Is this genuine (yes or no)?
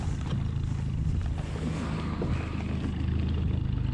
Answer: yes